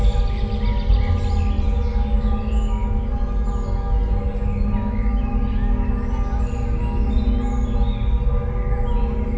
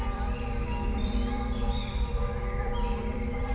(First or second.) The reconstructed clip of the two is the second